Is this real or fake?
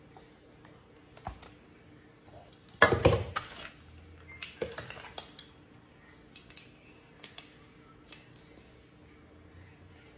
real